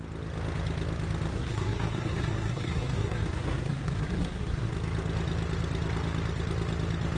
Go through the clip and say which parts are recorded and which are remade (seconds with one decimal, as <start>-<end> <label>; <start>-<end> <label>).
0.0-1.3 recorded; 1.3-4.7 remade; 4.7-7.2 recorded